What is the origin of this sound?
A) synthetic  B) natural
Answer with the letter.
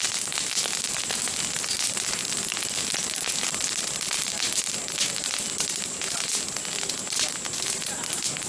B